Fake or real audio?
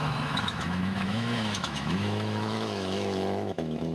fake